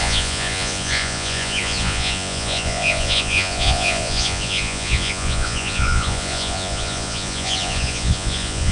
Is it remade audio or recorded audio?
remade